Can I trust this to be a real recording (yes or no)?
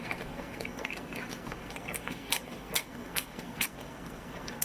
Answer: no